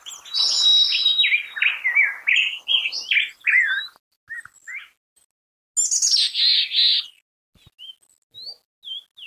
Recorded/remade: recorded